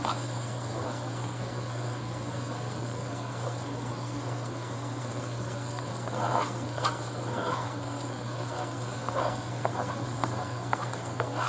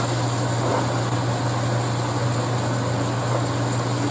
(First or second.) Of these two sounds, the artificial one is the first